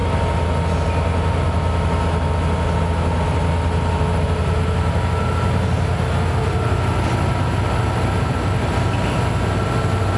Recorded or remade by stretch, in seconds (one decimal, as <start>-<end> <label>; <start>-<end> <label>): 0.0-10.2 recorded